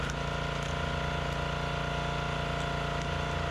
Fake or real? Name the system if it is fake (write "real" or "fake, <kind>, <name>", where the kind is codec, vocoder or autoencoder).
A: real